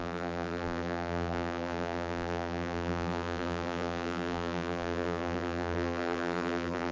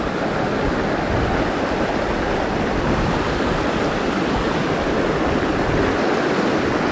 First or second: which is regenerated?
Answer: first